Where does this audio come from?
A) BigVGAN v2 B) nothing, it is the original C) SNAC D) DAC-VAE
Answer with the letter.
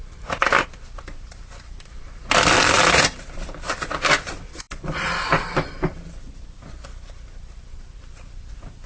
A